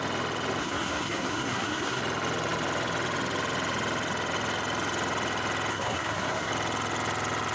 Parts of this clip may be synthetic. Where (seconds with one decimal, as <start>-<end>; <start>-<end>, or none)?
0.6-2.0; 5.7-6.5